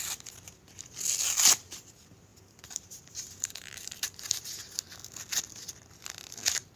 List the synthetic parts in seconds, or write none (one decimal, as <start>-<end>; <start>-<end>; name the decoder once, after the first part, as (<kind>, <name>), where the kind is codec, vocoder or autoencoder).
2.3-4.2 (vocoder, BigVGAN v2)